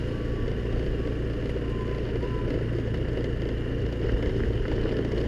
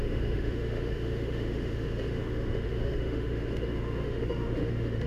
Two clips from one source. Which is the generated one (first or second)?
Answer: second